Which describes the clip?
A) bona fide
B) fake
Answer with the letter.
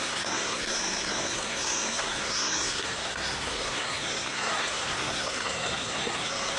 B